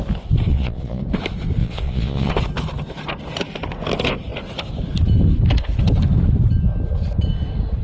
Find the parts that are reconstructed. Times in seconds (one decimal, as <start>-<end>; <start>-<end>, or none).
0.5-1.0; 1.6-2.3